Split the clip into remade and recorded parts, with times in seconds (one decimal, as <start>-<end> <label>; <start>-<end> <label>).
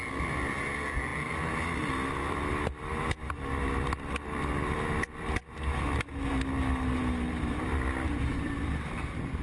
0.0-9.4 recorded